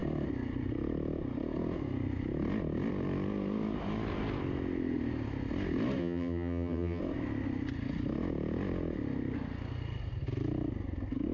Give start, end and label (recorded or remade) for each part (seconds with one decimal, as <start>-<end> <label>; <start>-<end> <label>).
0.0-6.0 recorded; 6.0-7.0 remade; 7.0-11.3 recorded